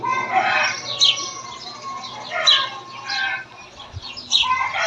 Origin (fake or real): real